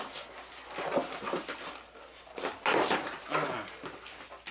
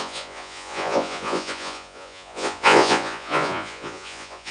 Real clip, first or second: first